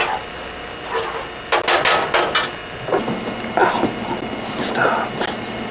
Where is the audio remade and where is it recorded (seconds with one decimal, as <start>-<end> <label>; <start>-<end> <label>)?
0.0-5.7 recorded